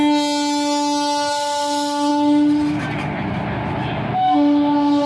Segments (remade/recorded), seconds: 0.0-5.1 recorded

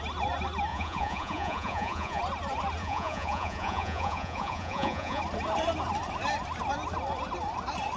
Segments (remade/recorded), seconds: 0.0-0.7 recorded; 0.7-2.2 remade; 2.2-2.8 recorded; 2.8-5.2 remade; 5.2-8.0 recorded

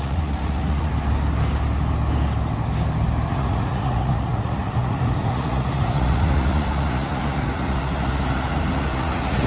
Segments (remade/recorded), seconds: 0.0-0.9 remade; 0.9-3.3 recorded; 3.3-9.5 remade

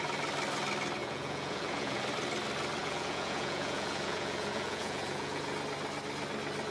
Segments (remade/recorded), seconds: 0.0-1.0 recorded; 1.0-2.0 remade; 2.0-2.8 recorded; 2.8-5.4 remade; 5.4-6.7 recorded

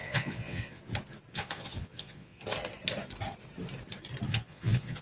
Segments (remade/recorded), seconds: 0.0-0.8 remade; 0.8-1.3 recorded; 1.3-2.4 remade; 2.4-4.3 recorded; 4.3-5.0 remade

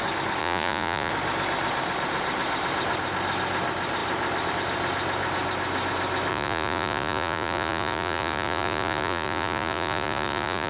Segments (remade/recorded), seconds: 0.0-0.4 recorded; 0.4-1.1 remade; 1.1-6.3 recorded; 6.3-10.7 remade

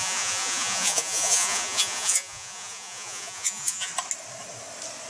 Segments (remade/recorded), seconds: 0.0-3.9 remade; 3.9-5.1 recorded